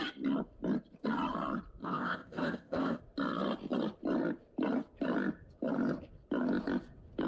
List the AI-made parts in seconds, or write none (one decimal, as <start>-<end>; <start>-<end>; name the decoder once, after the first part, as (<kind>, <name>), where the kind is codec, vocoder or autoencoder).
1.8-3.0 (codec, ZipCodec)